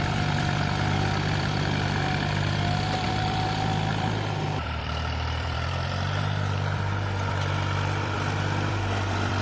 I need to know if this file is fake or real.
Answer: fake